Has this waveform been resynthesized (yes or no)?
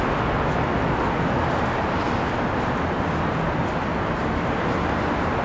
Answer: no